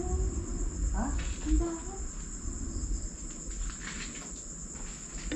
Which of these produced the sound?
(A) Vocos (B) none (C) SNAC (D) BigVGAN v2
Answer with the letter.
B